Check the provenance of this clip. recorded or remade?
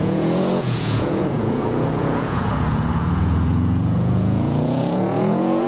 remade